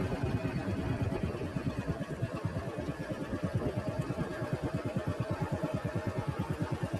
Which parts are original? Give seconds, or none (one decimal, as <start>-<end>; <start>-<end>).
0.0-5.1